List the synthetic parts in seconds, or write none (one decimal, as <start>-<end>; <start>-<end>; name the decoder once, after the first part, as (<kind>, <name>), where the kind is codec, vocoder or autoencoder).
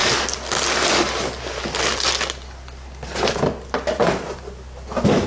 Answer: none